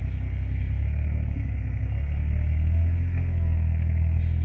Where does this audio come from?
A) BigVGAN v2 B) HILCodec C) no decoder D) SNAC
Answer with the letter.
D